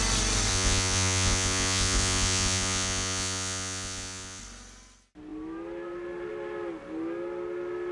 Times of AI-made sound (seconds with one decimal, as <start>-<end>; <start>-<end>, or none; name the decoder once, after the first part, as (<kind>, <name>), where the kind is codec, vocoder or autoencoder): 0.5-4.4 (vocoder, Vocos)